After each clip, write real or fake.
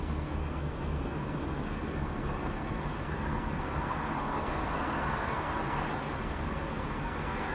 fake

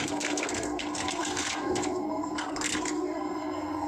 fake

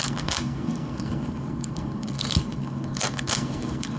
fake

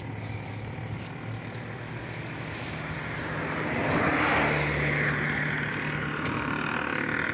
real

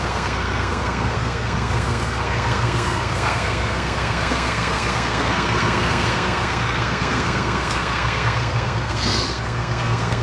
fake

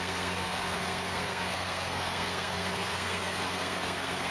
fake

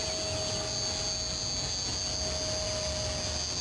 real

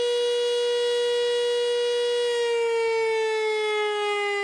real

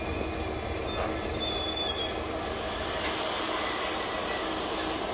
real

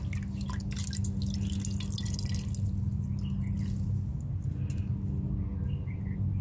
real